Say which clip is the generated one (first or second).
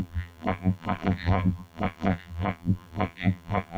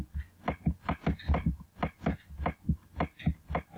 first